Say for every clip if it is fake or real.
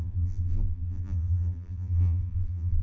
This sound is fake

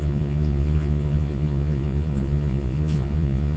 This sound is fake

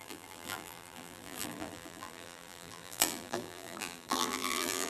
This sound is fake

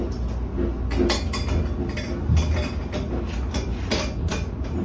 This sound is real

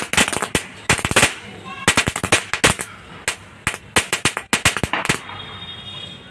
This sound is real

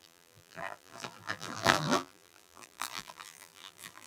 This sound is fake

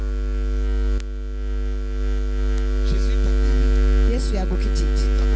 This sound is real